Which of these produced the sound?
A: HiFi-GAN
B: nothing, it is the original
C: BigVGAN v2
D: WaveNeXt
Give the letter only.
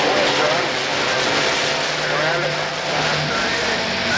B